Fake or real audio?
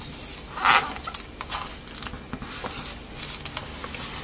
real